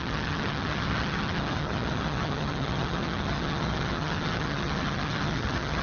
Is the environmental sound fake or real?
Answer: fake